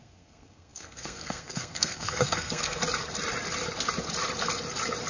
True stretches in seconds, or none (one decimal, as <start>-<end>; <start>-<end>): 2.8-5.1